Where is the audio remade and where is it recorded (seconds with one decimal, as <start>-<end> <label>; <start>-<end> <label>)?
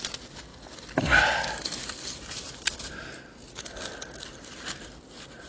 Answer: 0.0-5.5 recorded